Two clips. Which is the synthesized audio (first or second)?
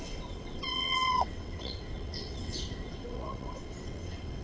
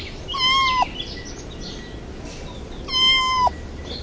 first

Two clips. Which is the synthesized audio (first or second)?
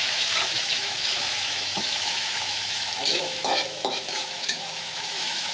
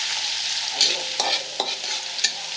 first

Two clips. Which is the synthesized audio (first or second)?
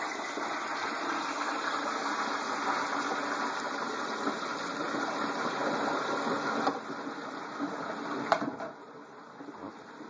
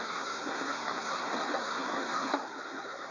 second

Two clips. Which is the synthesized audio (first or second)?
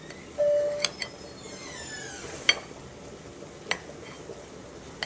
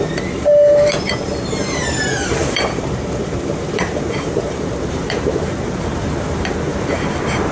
second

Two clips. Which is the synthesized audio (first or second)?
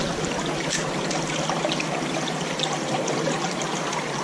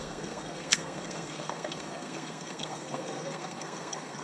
second